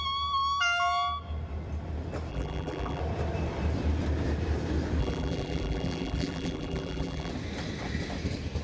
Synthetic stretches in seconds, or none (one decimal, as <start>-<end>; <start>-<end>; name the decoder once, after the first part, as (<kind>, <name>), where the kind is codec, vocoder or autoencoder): 2.3-3.0 (vocoder, BigVGAN v2); 5.0-7.3